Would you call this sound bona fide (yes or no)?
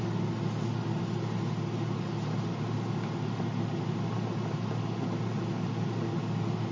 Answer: yes